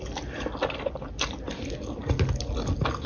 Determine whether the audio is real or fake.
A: real